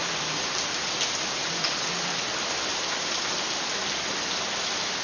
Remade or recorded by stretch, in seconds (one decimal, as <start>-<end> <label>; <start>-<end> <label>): 0.0-5.0 recorded